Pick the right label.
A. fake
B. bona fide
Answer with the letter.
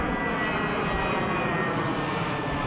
B